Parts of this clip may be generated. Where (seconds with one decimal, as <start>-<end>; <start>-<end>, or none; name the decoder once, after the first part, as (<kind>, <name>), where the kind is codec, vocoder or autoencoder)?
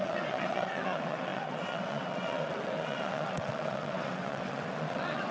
0.0-5.3 (vocoder, WaveNeXt)